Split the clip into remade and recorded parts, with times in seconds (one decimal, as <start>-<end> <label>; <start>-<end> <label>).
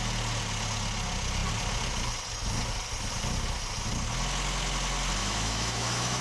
0.0-5.2 recorded; 5.2-6.2 remade